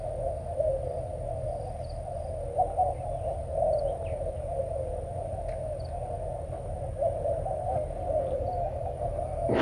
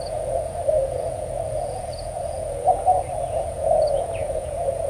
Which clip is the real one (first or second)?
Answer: first